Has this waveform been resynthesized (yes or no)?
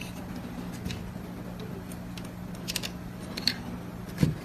no